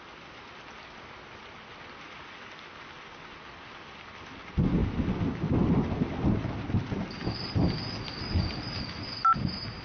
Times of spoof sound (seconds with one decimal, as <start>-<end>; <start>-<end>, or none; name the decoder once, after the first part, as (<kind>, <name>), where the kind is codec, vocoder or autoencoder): none